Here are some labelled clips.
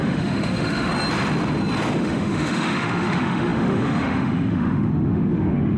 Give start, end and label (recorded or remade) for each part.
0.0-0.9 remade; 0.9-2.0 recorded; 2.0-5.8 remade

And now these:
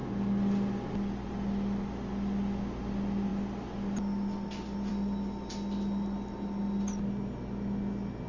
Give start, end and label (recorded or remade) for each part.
0.0-8.3 recorded

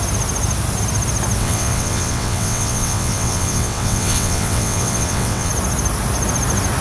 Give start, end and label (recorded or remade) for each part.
0.0-1.4 recorded; 1.4-5.5 remade; 5.5-6.8 recorded